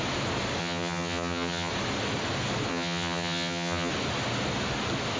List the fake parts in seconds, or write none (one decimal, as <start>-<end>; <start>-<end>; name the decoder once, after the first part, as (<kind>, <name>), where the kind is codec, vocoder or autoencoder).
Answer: 0.6-1.7 (vocoder, HiFi-GAN); 2.7-3.9